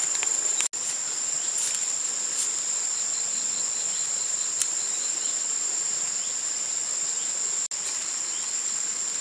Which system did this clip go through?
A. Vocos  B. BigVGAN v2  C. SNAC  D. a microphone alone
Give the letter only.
D